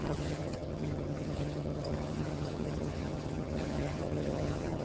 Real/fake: fake